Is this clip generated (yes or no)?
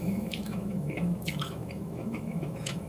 yes